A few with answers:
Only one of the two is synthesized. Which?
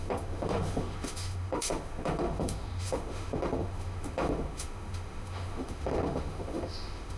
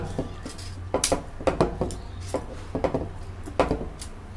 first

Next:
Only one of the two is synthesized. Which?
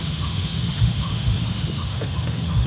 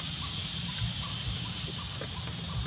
first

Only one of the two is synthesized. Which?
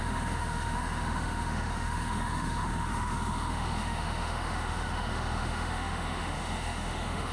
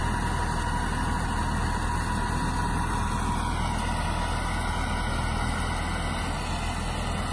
first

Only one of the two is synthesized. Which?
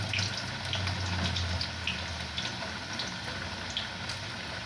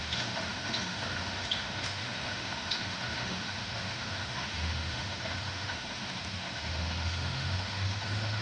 second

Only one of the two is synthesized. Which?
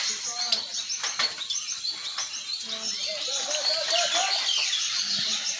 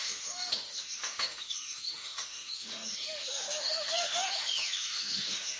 second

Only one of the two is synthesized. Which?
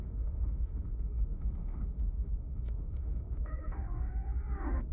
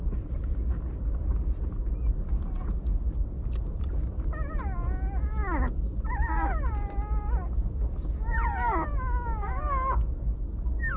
first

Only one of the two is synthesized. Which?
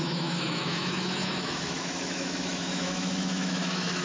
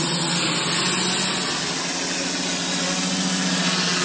first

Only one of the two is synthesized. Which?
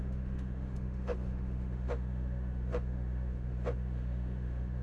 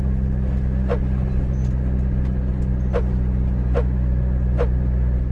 first